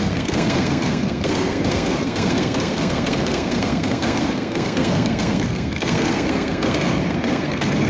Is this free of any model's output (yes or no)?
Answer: no